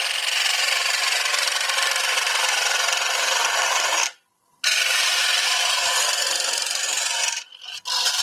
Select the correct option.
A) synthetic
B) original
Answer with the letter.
B